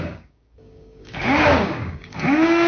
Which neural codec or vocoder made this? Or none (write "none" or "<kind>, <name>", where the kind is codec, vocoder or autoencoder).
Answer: codec, DAC